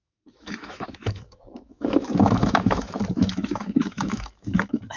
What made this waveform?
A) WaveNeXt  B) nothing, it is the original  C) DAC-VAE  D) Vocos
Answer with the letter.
C